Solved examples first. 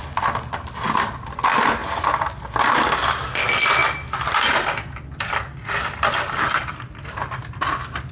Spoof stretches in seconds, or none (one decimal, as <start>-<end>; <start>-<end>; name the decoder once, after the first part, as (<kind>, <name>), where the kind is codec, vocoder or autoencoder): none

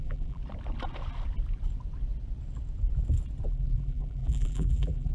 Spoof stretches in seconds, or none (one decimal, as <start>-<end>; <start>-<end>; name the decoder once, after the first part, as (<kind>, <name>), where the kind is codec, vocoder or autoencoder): 0.0-0.4 (vocoder, BigVGAN v2); 3.5-5.1

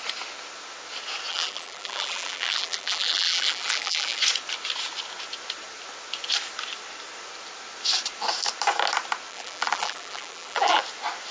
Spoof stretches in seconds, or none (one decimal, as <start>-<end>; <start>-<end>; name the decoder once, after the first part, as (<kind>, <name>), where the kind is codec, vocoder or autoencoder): 1.3-4.2 (vocoder, BigVGAN v2); 9.3-10.8

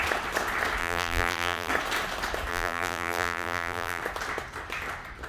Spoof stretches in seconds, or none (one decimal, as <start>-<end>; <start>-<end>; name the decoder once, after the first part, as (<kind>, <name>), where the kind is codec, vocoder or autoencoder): 0.8-1.7 (vocoder, BigVGAN v2); 2.5-4.0

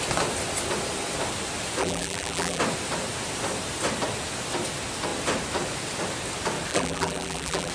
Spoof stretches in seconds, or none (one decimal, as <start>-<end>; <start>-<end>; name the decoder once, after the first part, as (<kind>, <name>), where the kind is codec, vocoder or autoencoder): 1.8-2.6 (vocoder, BigVGAN v2); 6.7-7.7

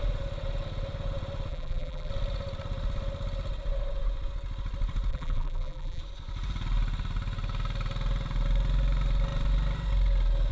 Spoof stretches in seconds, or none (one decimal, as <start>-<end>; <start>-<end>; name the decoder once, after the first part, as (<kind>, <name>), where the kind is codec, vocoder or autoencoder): 1.5-2.1 (vocoder, BigVGAN v2); 5.1-6.0

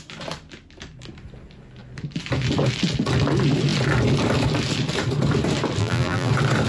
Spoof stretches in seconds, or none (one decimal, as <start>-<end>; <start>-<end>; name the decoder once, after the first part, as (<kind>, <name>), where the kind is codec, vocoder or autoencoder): 5.8-6.3 (vocoder, BigVGAN v2)

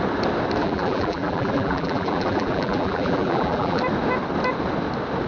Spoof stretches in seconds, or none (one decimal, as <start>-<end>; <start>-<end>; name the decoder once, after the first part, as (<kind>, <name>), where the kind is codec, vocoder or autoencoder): 0.6-3.8 (vocoder, BigVGAN v2)